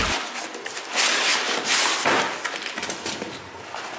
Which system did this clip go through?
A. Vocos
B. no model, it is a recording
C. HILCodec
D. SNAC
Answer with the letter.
B